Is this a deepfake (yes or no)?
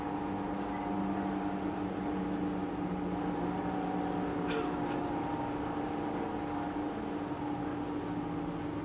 no